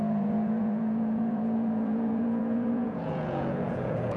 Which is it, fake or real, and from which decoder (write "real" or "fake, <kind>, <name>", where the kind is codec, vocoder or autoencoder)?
fake, vocoder, Vocos